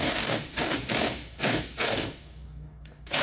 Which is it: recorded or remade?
remade